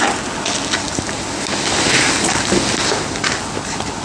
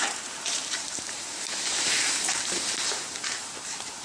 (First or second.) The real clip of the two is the first